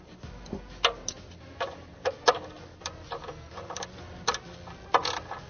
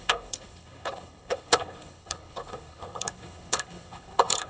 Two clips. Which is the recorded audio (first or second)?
first